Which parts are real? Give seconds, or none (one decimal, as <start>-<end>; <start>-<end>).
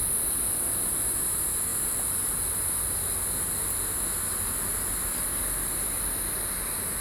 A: 0.0-7.0